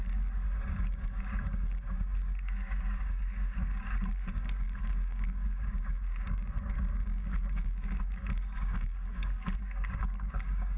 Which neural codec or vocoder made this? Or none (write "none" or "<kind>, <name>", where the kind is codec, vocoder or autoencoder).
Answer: codec, DAC